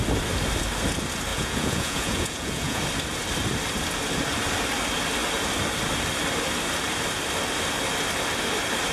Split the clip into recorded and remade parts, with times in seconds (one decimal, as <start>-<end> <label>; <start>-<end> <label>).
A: 0.0-1.3 recorded; 1.3-2.8 remade; 2.8-8.9 recorded